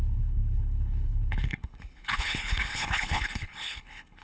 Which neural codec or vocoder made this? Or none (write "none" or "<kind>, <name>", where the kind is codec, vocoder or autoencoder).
codec, HILCodec